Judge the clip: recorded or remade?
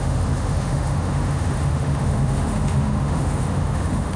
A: remade